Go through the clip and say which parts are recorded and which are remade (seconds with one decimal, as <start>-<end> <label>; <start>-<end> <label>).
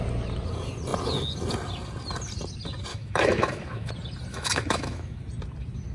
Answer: 0.0-2.9 recorded; 2.9-3.9 remade; 3.9-4.3 recorded; 4.3-5.2 remade; 5.2-5.9 recorded